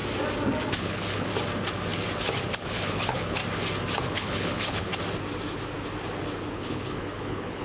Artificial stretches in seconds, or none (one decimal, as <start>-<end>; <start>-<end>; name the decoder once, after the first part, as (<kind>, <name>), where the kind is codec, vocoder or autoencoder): 0.7-1.3 (codec, HILCodec); 2.5-3.4; 4.0-4.9; 6.4-7.6